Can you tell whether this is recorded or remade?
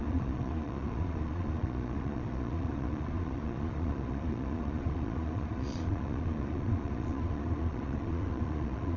remade